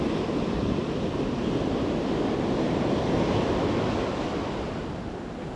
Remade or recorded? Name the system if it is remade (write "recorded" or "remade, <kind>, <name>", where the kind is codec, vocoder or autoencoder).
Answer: recorded